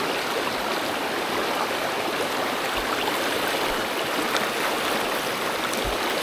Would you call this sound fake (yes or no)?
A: no